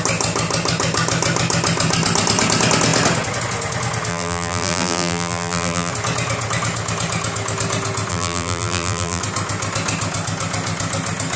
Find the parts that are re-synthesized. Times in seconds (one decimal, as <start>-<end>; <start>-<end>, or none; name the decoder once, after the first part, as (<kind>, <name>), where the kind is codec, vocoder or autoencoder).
4.1-5.9 (vocoder, BigVGAN v2); 8.1-9.2